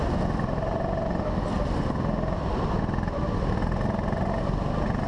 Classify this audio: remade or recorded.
recorded